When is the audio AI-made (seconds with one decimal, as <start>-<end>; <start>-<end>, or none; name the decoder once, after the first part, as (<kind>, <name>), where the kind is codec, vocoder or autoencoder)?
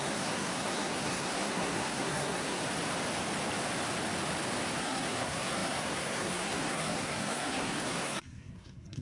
0.0-2.6 (codec, SNAC); 4.8-9.0